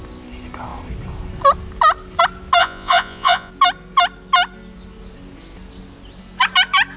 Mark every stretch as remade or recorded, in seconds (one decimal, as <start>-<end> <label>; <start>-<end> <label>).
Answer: 0.0-2.6 recorded; 2.6-3.5 remade; 3.5-7.0 recorded

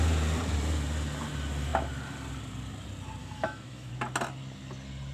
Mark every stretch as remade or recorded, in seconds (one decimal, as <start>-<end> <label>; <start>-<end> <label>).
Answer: 0.0-3.2 recorded; 3.2-3.9 remade; 3.9-5.1 recorded

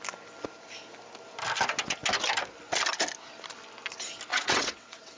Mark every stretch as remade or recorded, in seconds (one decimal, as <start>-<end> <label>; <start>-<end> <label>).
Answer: 0.0-4.3 recorded; 4.3-5.2 remade

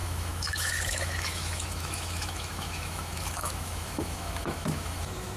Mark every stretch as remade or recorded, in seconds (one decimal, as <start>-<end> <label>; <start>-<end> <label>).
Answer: 0.0-5.4 remade

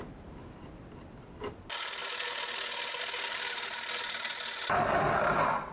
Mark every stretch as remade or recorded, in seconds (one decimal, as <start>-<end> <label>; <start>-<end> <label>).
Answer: 0.0-5.7 recorded

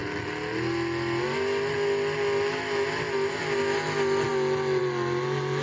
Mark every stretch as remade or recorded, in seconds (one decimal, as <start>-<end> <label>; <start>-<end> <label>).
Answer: 0.0-5.6 recorded

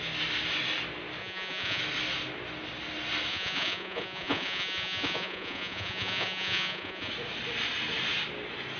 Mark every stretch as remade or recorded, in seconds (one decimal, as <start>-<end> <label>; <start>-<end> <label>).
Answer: 0.0-1.2 recorded; 1.2-1.8 remade; 1.8-3.3 recorded; 3.3-7.1 remade; 7.1-8.8 recorded

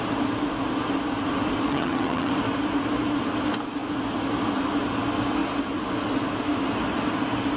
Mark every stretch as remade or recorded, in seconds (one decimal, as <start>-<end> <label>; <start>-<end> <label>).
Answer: 0.0-1.7 recorded; 1.7-2.3 remade; 2.3-7.6 recorded